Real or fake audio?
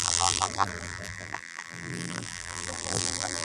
fake